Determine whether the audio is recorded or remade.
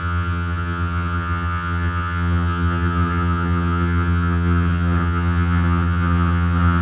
remade